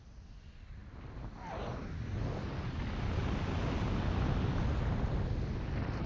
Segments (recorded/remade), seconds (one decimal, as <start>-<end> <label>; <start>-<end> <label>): 0.0-6.1 recorded